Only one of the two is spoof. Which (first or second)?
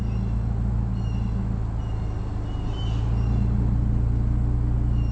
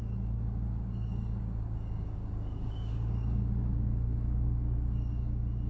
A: second